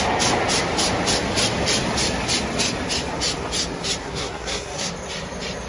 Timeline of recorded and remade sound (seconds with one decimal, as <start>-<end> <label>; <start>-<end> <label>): 0.0-4.0 recorded; 4.0-4.9 remade; 4.9-5.7 recorded